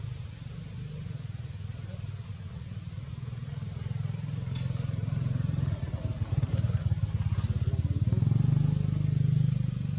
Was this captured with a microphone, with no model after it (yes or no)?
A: yes